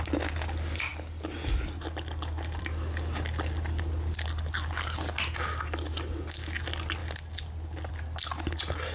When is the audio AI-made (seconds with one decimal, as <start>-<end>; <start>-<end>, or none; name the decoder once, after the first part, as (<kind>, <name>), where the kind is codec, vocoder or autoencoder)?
none